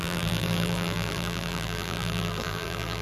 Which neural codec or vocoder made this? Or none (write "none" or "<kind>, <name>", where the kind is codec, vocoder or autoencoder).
vocoder, BigVGAN v2